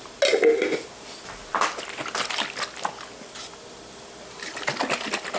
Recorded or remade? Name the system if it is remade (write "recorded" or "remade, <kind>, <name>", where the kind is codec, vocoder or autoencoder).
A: recorded